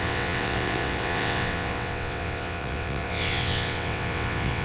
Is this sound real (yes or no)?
no